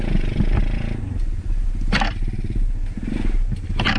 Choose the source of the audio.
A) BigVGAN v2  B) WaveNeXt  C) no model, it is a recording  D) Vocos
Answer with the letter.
C